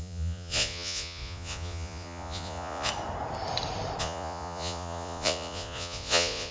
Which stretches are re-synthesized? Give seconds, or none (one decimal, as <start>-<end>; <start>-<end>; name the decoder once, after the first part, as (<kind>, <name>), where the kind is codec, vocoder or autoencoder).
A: 0.0-2.9 (vocoder, Vocos); 4.0-6.5